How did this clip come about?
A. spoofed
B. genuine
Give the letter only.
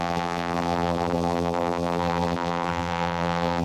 A